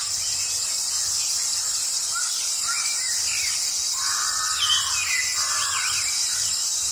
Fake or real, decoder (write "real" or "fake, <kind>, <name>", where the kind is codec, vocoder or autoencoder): real